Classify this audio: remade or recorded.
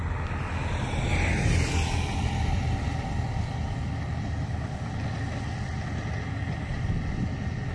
recorded